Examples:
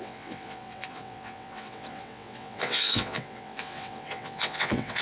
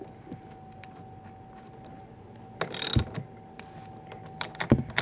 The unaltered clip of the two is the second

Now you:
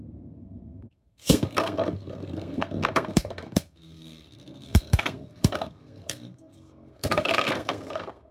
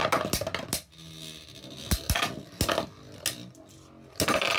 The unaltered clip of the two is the second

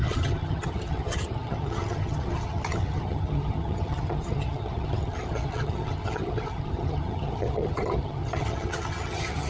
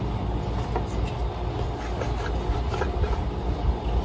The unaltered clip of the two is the second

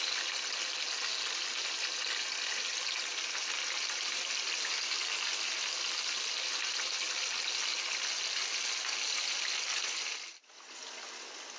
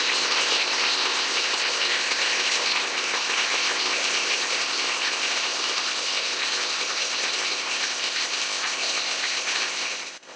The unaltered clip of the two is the first